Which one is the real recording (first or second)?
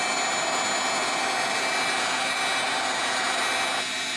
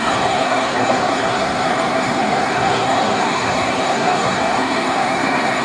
first